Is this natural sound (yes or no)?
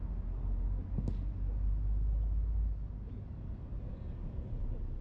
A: yes